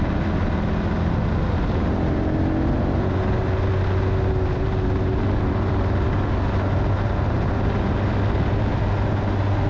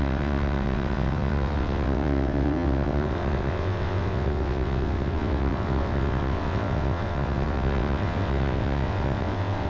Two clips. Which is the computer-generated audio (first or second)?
second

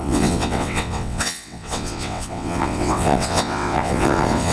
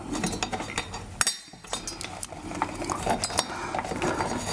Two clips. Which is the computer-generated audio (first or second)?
first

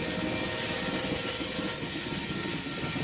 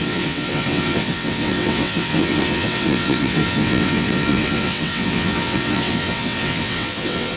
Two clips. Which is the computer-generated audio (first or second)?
second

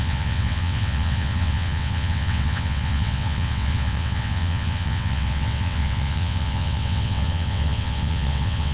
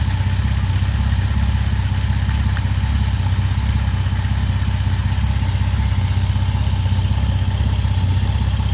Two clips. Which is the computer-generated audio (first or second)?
first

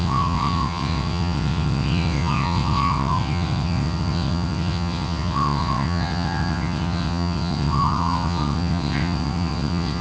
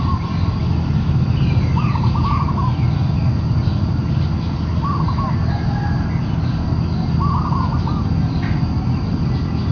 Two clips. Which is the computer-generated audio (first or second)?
first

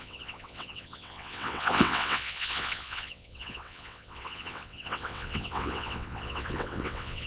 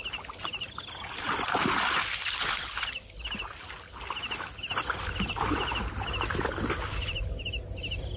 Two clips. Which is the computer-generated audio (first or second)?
first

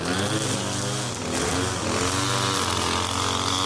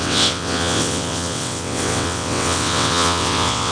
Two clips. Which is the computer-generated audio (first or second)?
second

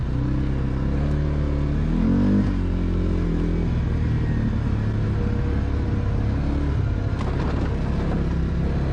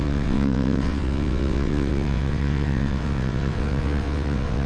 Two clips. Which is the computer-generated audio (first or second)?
second